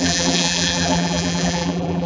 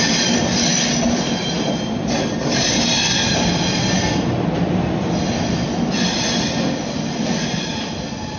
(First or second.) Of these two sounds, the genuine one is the second